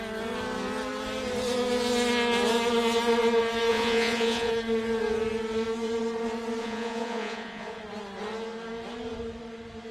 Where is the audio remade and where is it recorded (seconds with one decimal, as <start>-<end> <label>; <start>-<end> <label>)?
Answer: 0.0-3.7 recorded; 3.7-4.5 remade; 4.5-6.6 recorded; 6.6-7.8 remade; 7.8-9.9 recorded

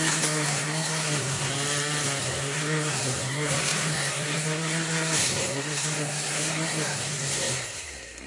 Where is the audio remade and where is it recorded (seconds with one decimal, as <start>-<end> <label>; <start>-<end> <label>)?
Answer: 0.0-1.5 remade; 1.5-2.2 recorded; 2.2-8.3 remade

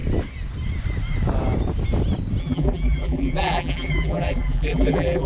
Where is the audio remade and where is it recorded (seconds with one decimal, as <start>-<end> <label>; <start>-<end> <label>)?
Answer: 0.0-2.4 recorded; 2.4-5.3 remade

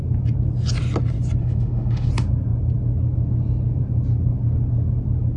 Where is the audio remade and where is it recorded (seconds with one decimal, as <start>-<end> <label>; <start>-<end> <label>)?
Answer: 0.0-1.4 recorded; 1.4-2.1 remade; 2.1-5.4 recorded